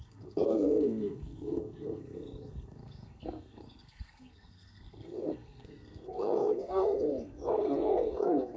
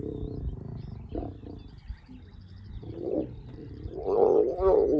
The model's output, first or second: first